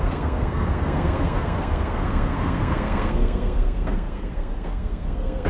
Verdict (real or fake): fake